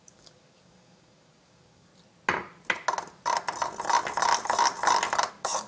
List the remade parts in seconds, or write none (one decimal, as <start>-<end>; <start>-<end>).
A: 0.0-1.9; 5.3-5.7